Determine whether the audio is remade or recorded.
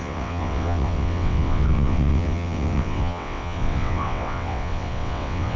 remade